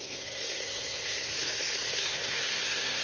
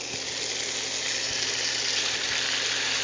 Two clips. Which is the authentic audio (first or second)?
second